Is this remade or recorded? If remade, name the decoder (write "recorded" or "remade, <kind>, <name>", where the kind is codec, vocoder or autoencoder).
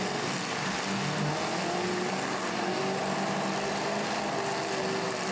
recorded